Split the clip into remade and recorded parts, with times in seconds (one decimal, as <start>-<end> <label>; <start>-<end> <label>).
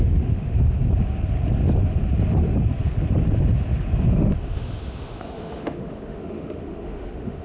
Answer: 0.0-0.8 remade; 0.8-4.1 recorded; 4.1-7.4 remade